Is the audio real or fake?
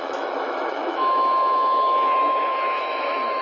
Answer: fake